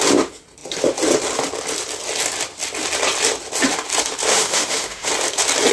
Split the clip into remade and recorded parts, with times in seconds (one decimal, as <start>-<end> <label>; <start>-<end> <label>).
0.0-4.3 recorded; 4.3-5.1 remade; 5.1-5.7 recorded